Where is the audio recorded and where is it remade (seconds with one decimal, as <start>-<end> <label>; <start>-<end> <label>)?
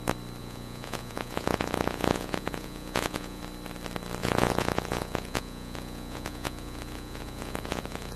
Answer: 0.0-0.4 recorded; 0.4-3.4 remade; 3.4-4.2 recorded; 4.2-8.2 remade